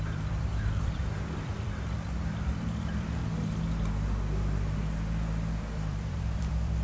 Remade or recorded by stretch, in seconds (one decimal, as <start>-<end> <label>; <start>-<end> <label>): 0.0-3.2 remade; 3.2-5.5 recorded; 5.5-6.8 remade